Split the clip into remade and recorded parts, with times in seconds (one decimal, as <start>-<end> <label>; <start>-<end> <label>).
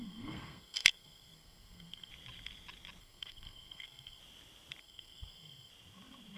0.0-2.1 remade; 2.1-3.0 recorded; 3.0-4.2 remade; 4.2-4.8 recorded; 4.8-5.7 remade; 5.7-6.4 recorded